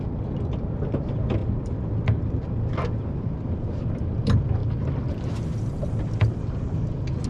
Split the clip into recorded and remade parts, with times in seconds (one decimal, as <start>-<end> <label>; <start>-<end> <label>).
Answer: 0.0-7.3 recorded